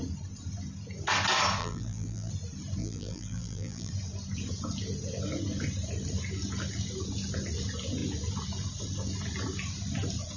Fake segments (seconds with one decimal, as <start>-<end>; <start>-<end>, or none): 1.6-2.3; 2.8-3.9